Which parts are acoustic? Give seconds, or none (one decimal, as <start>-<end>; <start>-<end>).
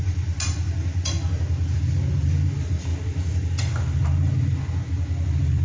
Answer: 0.0-5.6